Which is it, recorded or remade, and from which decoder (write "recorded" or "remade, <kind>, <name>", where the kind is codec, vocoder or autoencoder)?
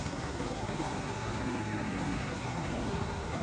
remade, codec, SNAC